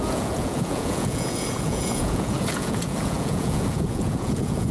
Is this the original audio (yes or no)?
no